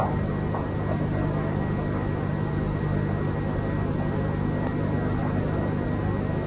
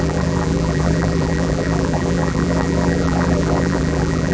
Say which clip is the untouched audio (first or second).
first